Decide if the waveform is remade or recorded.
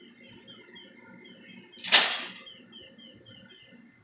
recorded